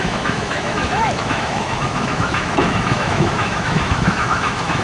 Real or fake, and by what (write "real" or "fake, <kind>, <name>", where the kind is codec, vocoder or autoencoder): fake, autoencoder, DAC-VAE